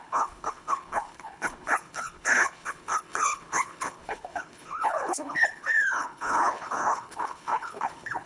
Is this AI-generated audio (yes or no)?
yes